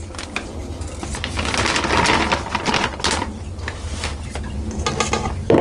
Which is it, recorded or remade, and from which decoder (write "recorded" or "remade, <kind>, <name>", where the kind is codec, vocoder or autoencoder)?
recorded